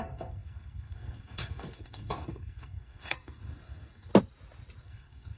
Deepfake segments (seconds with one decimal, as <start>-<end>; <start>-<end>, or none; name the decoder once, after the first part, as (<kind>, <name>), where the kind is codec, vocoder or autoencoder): 0.0-4.1 (codec, SNAC); 4.8-5.4